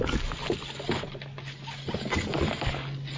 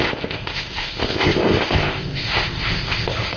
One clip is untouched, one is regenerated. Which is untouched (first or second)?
first